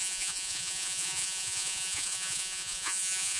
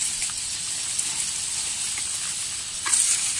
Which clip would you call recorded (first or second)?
second